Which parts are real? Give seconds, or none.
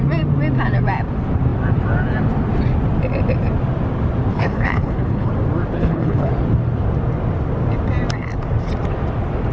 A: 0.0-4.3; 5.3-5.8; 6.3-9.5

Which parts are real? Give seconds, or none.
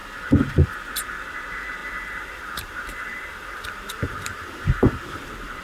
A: 0.0-1.8